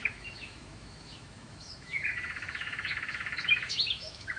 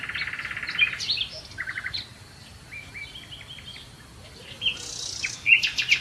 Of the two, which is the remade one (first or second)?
first